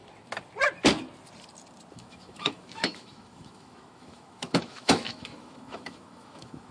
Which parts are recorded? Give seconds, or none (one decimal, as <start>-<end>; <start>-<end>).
0.0-1.9

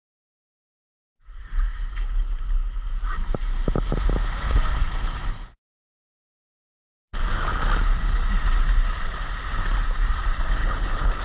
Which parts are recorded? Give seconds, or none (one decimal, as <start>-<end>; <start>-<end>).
0.0-10.6

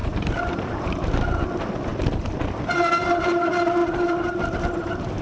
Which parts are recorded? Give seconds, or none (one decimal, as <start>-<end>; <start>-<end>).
1.4-3.8

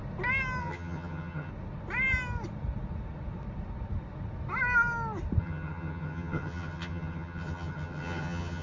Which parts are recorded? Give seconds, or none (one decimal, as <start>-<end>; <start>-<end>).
0.0-0.6; 1.5-5.4

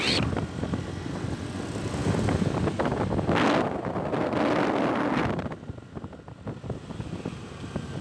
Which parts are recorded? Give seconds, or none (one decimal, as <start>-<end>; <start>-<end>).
0.0-8.0